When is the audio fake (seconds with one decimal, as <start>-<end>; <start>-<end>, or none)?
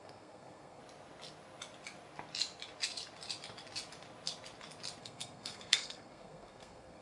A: 0.0-0.8; 5.0-7.0